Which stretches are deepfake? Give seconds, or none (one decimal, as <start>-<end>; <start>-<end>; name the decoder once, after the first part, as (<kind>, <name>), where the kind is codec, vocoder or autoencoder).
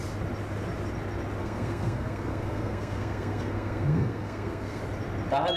1.4-4.8 (codec, SNAC)